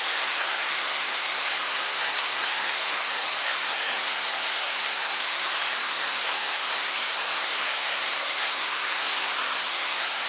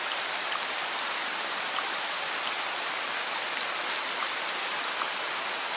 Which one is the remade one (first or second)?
first